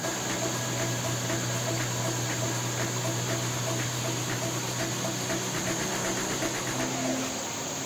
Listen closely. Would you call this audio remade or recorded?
recorded